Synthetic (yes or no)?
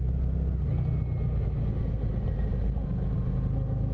no